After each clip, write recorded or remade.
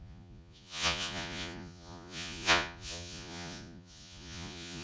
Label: remade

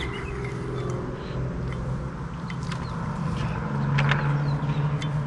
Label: recorded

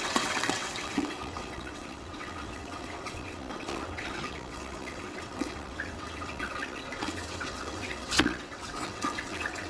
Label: remade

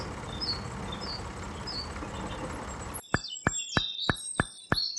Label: recorded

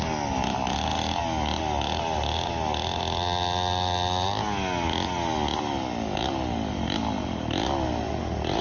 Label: recorded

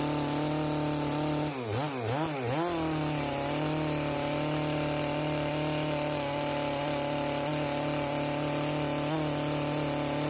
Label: recorded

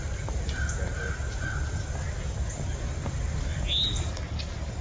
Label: recorded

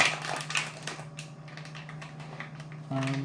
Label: recorded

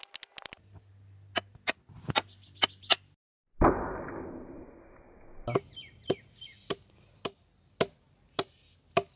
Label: recorded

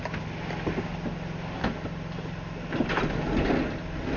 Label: recorded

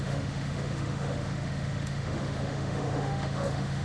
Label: remade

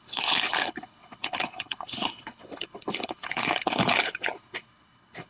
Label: remade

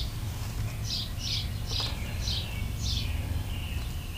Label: recorded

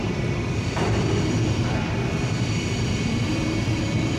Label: remade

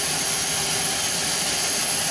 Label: recorded